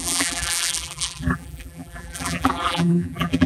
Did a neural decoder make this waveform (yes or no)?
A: yes